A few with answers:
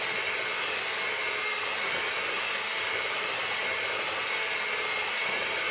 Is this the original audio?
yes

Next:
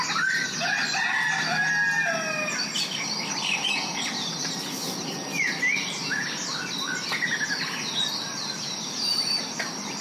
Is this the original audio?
yes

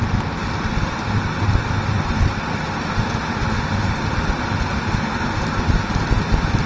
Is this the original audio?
yes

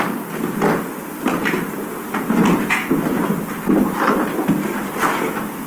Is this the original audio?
yes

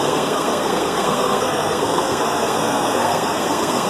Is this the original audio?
no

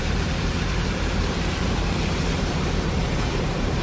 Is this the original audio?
no